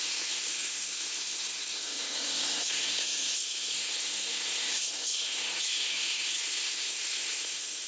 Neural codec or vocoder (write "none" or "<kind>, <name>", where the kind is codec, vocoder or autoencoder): codec, SNAC